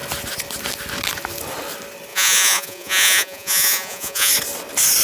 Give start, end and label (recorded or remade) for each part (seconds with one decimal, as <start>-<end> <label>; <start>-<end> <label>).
0.0-2.1 recorded; 2.1-4.3 remade; 4.3-5.0 recorded